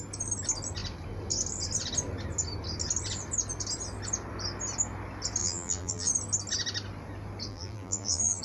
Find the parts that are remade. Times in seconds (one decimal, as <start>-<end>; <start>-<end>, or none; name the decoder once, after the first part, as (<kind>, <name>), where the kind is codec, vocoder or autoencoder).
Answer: 5.4-6.1 (vocoder, BigVGAN v2); 7.5-8.4